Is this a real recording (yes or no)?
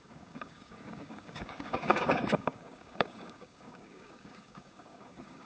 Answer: no